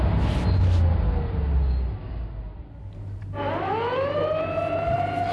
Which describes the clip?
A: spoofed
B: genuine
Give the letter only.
B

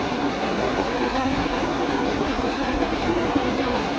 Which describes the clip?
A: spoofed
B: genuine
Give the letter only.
A